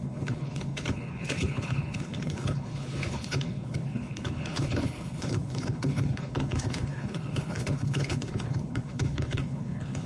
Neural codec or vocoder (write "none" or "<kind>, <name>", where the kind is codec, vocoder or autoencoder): codec, HILCodec